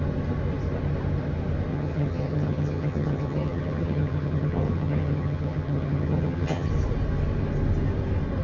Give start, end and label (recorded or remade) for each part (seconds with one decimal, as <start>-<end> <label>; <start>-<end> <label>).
0.0-1.7 recorded; 1.7-6.7 remade; 6.7-8.4 recorded